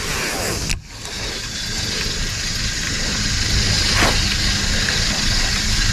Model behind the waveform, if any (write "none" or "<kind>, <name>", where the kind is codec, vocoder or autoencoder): none